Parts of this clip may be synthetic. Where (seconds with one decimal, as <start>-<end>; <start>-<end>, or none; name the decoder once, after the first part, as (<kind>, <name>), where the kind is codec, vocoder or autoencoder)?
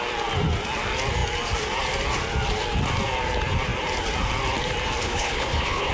5.0-5.9 (codec, HILCodec)